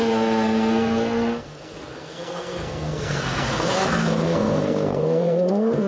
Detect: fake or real fake